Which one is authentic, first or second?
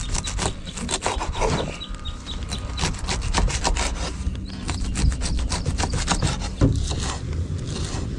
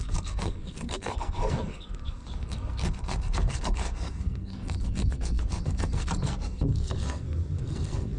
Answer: first